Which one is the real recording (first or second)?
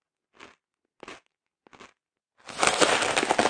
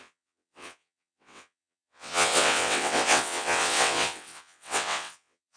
first